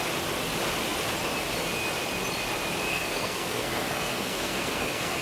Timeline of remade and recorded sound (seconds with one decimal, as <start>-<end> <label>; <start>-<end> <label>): 0.0-2.9 recorded; 2.9-5.2 remade